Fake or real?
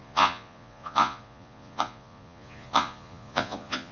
fake